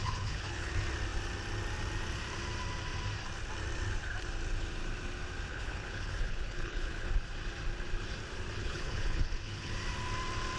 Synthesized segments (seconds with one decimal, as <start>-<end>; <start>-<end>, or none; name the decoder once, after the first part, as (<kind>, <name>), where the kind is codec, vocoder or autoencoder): 0.0-0.7 (codec, HILCodec); 5.5-7.1; 8.6-9.7